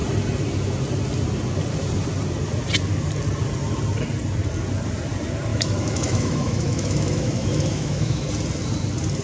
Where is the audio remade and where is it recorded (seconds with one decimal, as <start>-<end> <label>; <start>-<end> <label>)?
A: 0.0-5.5 recorded; 5.5-8.3 remade; 8.3-9.2 recorded